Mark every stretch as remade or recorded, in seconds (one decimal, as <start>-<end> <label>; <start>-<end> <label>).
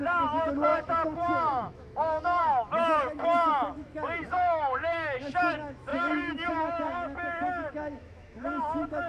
0.0-9.1 remade